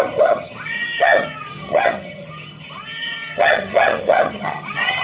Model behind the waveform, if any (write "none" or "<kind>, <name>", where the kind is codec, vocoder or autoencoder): vocoder, HiFi-GAN